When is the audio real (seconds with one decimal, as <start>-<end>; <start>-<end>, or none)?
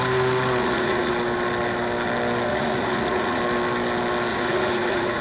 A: 0.0-0.6; 1.1-2.5; 3.4-4.3